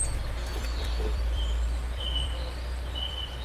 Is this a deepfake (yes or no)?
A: yes